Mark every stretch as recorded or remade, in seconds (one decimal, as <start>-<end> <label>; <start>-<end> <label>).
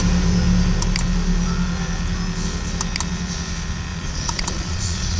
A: 0.0-3.9 recorded; 3.9-5.2 remade